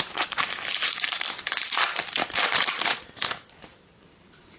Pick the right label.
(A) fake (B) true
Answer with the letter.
A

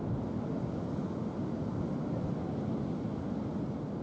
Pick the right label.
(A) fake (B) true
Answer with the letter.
B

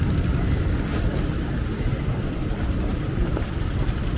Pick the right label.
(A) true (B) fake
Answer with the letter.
B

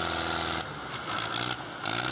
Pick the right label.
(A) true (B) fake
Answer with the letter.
A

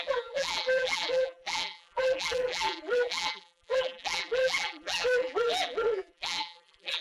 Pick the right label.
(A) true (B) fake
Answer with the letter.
B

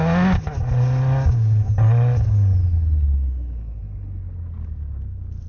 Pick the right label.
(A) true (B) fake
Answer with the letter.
A